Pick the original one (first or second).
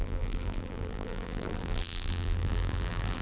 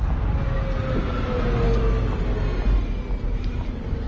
second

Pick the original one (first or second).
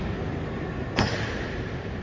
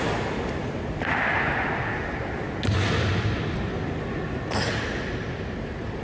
second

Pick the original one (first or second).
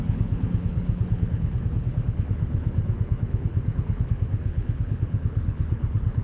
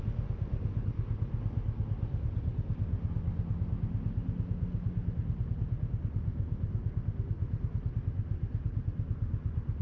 second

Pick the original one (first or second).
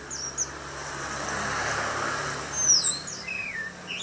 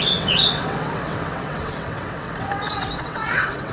first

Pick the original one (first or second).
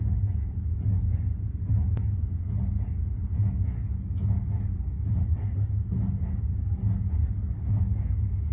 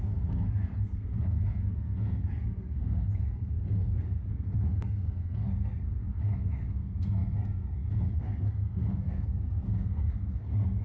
first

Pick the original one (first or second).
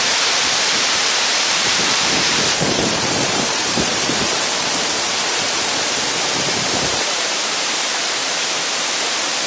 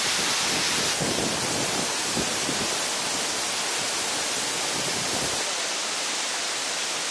second